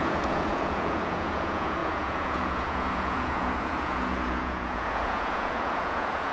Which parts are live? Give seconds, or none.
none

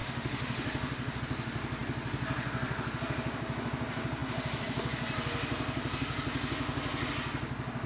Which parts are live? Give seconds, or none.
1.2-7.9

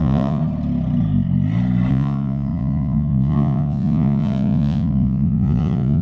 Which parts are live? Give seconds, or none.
0.4-1.9